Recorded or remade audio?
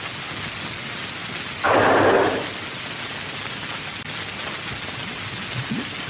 recorded